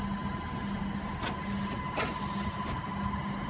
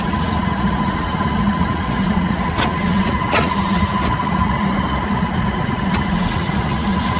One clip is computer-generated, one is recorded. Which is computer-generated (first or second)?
second